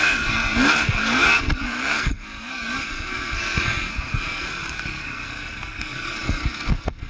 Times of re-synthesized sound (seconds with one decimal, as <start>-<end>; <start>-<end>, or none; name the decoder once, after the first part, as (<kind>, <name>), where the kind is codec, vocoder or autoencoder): 0.0-7.1 (codec, SNAC)